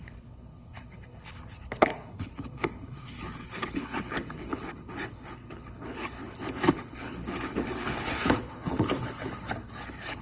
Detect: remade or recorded remade